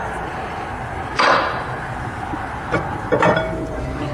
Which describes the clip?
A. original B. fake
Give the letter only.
A